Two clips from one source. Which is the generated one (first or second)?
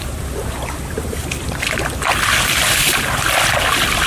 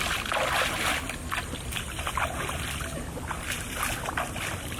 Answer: second